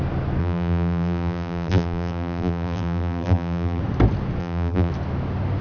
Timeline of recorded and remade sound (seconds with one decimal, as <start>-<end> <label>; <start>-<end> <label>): 0.0-0.4 recorded; 0.4-3.8 remade; 3.8-4.4 recorded; 4.4-4.9 remade; 4.9-5.6 recorded